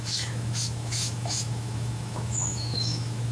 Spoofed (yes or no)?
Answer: yes